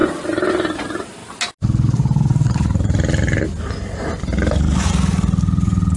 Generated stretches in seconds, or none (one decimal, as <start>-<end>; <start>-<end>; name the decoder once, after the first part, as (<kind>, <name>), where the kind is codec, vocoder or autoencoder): none